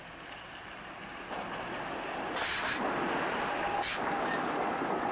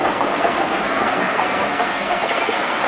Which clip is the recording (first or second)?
first